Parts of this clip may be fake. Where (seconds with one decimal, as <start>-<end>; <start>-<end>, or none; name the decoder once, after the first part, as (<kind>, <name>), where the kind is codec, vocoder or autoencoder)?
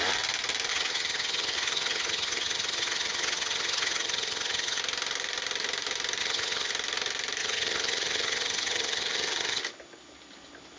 0.7-4.8 (vocoder, HiFi-GAN); 6.2-6.7; 7.4-9.6